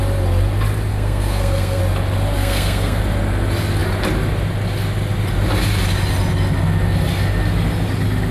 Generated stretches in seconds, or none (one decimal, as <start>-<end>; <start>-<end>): 0.9-1.8; 2.4-3.0